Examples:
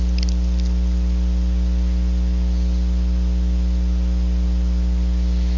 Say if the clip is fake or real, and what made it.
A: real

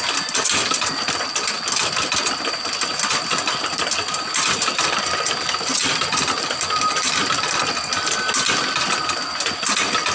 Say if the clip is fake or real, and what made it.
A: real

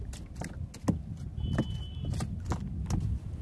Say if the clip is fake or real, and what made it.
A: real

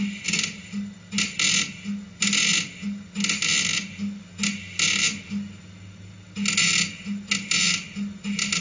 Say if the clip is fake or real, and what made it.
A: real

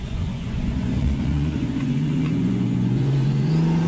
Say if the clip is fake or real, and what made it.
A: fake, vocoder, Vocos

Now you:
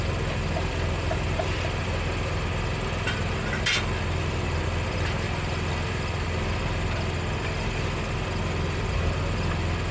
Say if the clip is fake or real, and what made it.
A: real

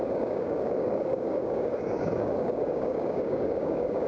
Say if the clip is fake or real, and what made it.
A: fake, codec, DAC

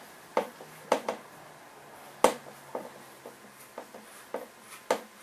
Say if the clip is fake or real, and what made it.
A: real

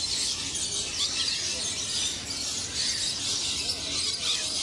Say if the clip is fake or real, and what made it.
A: real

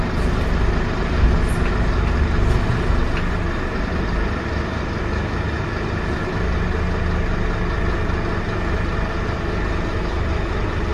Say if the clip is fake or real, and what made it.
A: real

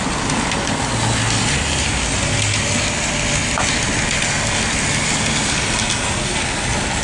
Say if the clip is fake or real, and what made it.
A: real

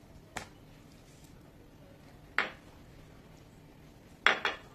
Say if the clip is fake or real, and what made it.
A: real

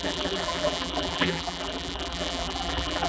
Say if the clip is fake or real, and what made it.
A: fake, vocoder, BigVGAN v2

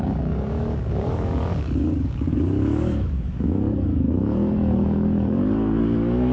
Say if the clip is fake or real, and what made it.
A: fake, codec, DAC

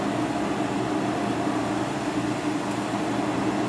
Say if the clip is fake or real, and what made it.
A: real